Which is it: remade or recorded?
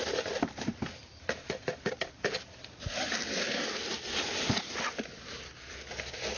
remade